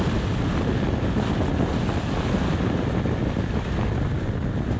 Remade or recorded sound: recorded